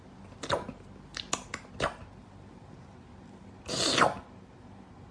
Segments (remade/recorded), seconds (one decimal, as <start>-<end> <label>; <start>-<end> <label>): 0.0-5.1 recorded